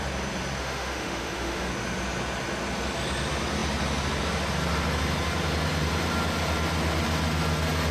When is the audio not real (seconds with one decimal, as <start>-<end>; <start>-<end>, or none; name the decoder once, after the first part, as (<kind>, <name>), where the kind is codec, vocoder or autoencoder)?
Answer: 0.6-1.7 (autoencoder, DAC-VAE)